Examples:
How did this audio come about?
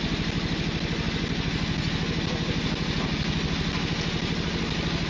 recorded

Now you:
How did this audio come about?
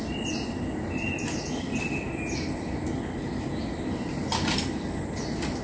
recorded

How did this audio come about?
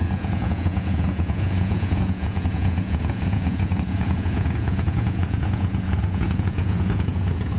remade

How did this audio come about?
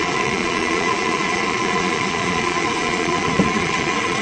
remade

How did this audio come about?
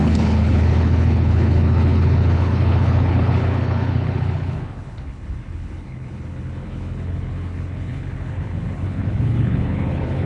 remade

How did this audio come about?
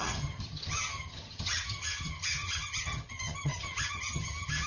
remade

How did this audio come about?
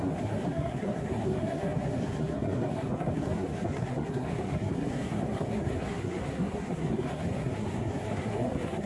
remade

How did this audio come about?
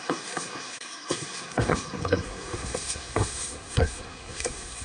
remade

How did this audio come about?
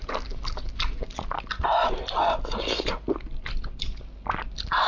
recorded